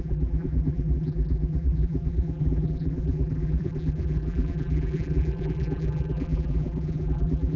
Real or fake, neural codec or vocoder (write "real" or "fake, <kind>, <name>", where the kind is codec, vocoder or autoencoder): fake, vocoder, BigVGAN v2